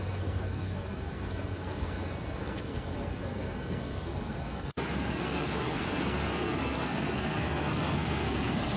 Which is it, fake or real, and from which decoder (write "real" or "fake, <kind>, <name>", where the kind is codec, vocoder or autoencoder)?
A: fake, codec, SNAC